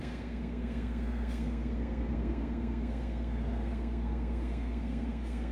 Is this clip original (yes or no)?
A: no